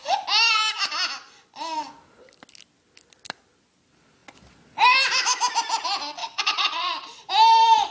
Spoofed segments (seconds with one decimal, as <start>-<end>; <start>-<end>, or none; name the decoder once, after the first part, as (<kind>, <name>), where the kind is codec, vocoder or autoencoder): 6.2-7.3 (vocoder, WaveNeXt)